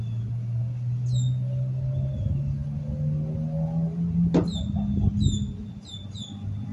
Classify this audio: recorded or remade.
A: recorded